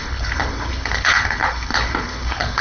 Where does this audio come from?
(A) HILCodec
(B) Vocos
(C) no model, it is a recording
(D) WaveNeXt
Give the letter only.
A